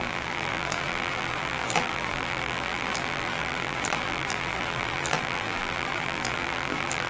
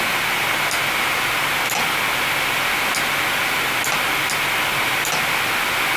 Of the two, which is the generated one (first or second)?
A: first